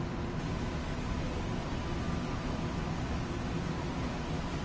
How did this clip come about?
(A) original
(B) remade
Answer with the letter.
A